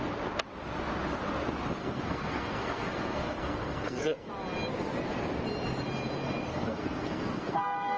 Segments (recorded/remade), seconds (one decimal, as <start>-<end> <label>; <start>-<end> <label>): 0.0-1.8 recorded; 1.8-4.3 remade; 4.3-6.5 recorded; 6.5-8.0 remade